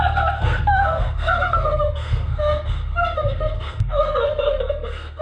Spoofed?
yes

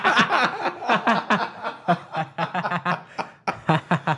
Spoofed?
no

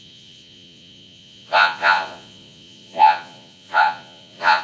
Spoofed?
yes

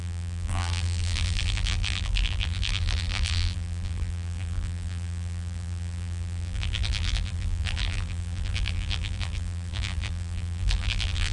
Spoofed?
yes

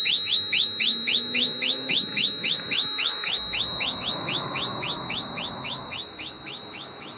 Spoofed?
yes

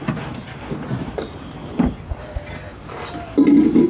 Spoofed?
no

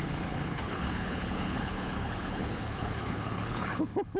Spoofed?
yes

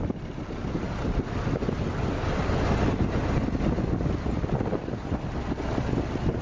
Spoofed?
no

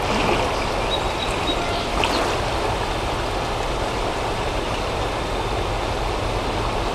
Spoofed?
no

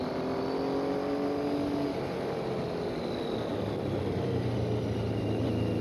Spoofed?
no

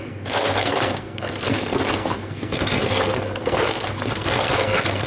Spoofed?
yes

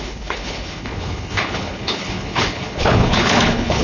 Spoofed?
yes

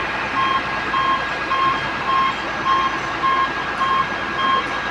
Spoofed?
no